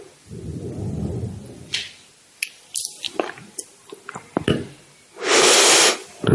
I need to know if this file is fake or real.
real